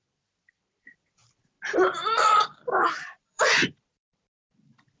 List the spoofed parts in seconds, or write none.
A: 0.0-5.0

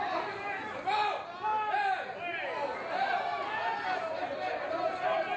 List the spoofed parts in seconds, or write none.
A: none

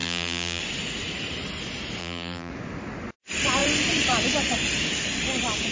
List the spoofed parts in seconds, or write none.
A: 0.0-0.6; 2.0-2.5

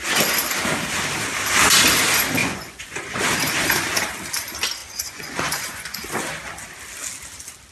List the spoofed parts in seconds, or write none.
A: 2.4-3.2; 4.8-6.1